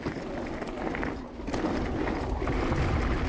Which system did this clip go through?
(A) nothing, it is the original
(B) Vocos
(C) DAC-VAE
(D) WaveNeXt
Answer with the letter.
A